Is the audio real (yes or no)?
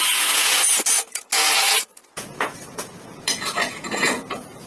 no